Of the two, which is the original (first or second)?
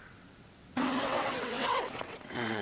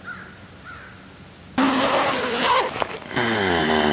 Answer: second